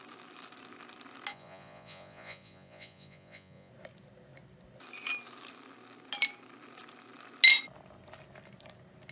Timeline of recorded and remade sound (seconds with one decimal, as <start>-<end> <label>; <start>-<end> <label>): 0.0-1.3 recorded; 1.3-3.7 remade; 3.7-9.1 recorded